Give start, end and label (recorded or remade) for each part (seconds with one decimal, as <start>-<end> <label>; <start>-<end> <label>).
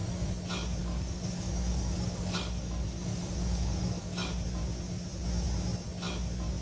0.0-0.8 recorded; 0.8-4.3 remade; 4.3-6.6 recorded